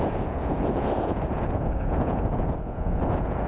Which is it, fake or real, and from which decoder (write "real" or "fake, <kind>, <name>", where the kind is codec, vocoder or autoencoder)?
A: fake, vocoder, Vocos